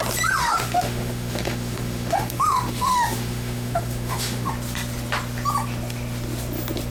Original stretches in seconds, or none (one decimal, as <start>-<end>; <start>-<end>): 0.0-0.4; 4.5-6.9